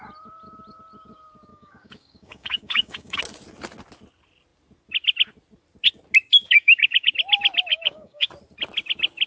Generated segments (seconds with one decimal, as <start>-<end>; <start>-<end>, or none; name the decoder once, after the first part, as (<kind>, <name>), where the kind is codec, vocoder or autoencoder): 1.5-3.2 (codec, DAC); 6.4-7.1; 7.7-8.3